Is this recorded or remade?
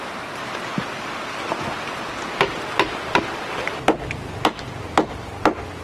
recorded